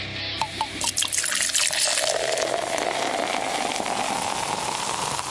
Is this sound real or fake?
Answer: real